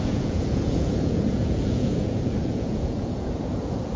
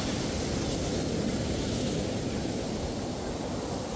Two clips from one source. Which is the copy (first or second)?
first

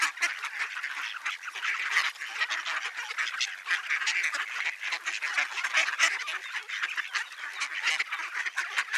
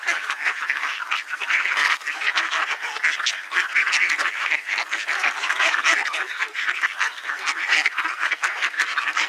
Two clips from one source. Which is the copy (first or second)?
second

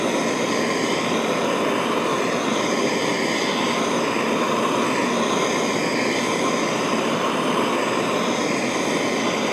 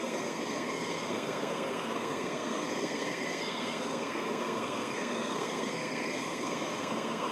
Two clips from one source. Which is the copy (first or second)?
second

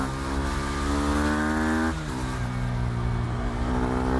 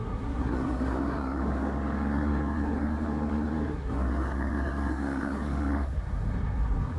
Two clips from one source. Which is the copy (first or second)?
second